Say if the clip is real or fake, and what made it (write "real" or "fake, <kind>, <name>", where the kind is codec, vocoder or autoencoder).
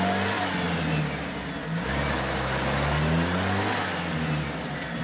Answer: real